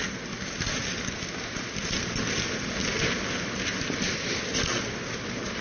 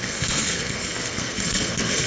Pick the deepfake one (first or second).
second